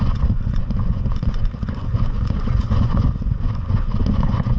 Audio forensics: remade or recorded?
remade